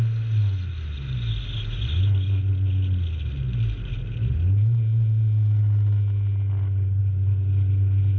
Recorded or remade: recorded